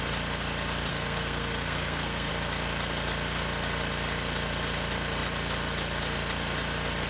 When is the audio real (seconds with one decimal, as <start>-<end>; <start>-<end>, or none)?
0.0-0.9; 2.3-7.1